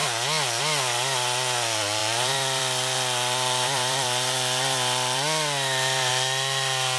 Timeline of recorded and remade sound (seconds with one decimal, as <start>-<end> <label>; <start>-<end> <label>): 0.0-2.0 recorded; 2.0-6.1 remade; 6.1-7.0 recorded

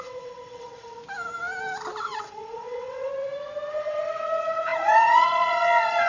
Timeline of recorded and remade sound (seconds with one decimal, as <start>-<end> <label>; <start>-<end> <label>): 0.0-1.0 remade; 1.0-2.0 recorded; 2.0-3.1 remade; 3.1-3.7 recorded; 3.7-6.1 remade

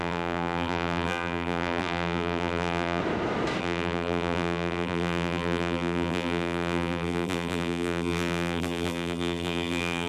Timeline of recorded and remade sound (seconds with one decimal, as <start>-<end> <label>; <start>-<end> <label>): 0.0-3.0 remade; 3.0-3.6 recorded; 3.6-10.1 remade

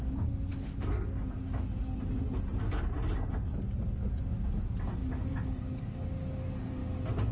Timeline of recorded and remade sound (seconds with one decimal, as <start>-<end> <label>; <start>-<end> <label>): 0.0-7.3 recorded

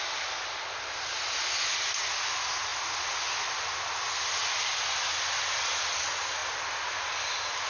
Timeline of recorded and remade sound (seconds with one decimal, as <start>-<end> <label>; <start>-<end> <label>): 0.0-7.7 recorded